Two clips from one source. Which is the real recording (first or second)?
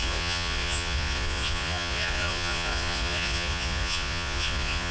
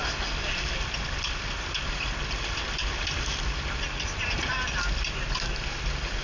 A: second